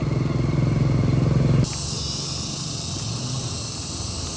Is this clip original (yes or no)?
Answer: yes